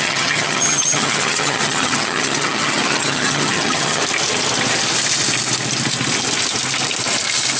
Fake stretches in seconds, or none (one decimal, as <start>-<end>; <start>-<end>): 0.0-4.0